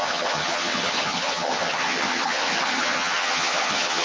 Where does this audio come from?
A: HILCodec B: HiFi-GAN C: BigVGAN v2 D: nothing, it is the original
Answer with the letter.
B